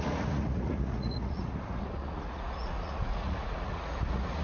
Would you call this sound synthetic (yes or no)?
yes